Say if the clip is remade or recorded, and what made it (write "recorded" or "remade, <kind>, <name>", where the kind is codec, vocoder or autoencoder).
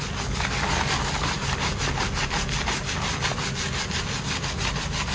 recorded